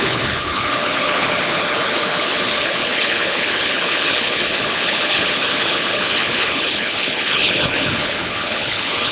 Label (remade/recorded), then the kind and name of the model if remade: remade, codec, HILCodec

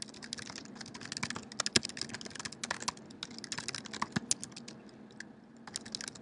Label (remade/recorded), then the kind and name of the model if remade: recorded